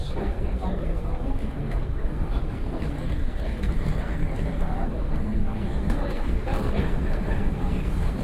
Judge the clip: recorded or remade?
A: remade